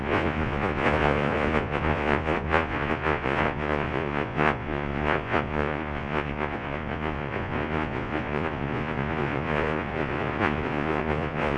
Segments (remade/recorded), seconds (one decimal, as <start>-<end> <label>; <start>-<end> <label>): 0.0-11.6 remade